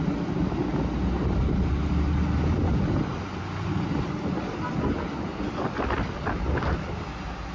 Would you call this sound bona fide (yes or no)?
yes